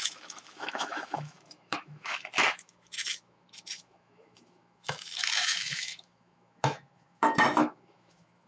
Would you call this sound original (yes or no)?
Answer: no